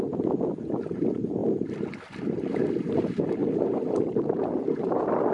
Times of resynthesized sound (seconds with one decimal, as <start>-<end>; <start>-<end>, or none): 1.4-2.9; 3.4-5.3